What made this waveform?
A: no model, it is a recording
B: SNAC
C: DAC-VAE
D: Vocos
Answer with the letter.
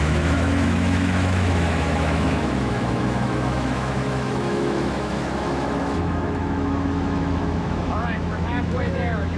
C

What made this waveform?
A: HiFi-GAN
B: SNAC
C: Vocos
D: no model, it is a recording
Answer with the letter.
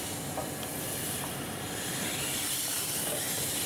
D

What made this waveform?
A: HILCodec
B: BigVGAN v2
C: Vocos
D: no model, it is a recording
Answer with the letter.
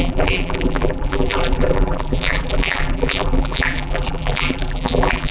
B